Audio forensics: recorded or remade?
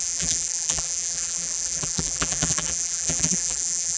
remade